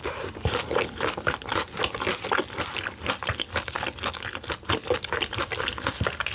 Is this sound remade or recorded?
recorded